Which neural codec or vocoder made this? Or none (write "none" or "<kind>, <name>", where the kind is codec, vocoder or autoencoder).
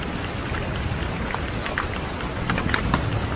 none